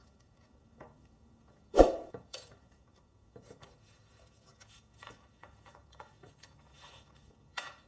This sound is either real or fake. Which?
fake